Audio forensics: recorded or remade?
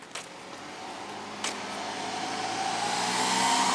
recorded